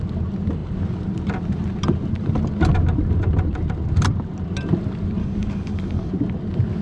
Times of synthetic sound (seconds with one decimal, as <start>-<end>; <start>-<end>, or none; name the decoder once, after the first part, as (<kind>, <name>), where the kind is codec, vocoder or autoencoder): 5.2-6.1 (codec, DAC)